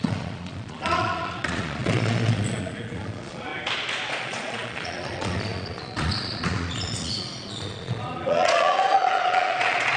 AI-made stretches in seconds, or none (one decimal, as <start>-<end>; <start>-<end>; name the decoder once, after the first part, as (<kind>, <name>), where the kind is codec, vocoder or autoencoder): 0.0-3.5 (vocoder, Vocos); 4.1-10.0